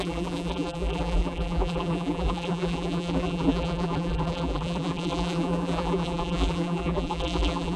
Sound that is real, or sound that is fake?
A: fake